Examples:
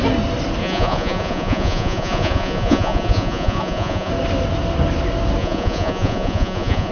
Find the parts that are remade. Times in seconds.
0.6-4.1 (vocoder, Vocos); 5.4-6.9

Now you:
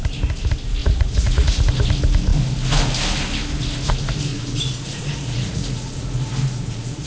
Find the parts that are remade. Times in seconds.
0.8-1.6 (vocoder, Vocos); 4.3-7.1

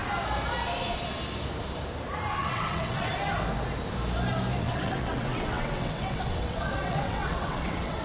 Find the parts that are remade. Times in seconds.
2.4-3.1 (vocoder, WaveNeXt); 4.6-8.0

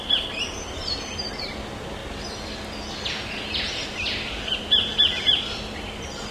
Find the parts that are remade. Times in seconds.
none

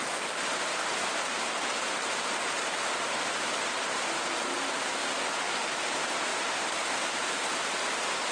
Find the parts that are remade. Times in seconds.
0.0-0.8 (vocoder, BigVGAN v2); 5.4-6.3; 7.3-8.3

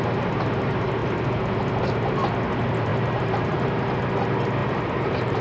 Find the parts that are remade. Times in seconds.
2.9-3.9 (vocoder, BigVGAN v2); 4.6-5.4

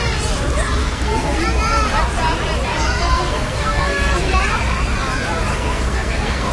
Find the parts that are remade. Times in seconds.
0.8-1.4 (codec, SNAC); 2.7-4.4; 5.5-6.5